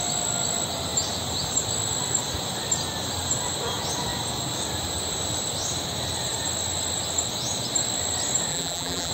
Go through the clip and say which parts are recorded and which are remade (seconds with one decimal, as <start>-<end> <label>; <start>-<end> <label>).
0.0-8.5 recorded; 8.5-9.1 remade